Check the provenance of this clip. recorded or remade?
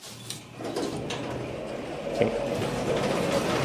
recorded